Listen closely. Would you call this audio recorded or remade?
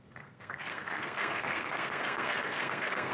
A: remade